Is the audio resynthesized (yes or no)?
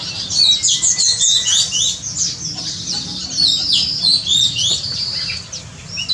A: no